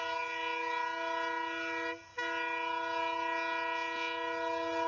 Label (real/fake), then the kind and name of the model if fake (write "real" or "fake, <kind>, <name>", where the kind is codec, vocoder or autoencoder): real